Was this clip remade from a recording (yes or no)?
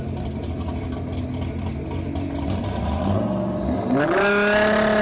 no